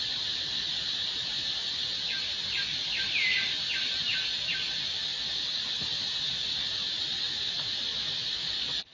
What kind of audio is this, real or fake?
real